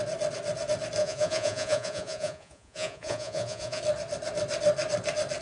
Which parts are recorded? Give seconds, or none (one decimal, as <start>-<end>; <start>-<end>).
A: 0.0-1.0; 3.8-5.4